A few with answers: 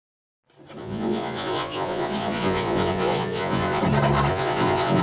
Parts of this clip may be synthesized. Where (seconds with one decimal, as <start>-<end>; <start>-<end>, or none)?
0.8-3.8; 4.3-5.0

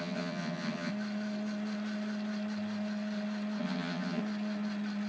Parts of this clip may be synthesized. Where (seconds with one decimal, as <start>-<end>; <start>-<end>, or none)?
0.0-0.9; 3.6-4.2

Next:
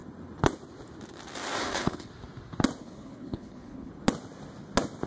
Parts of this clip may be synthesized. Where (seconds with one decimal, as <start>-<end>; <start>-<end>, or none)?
1.6-2.1; 2.8-3.9